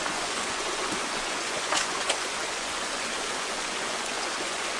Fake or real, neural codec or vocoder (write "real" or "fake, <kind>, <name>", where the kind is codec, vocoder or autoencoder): fake, vocoder, Vocos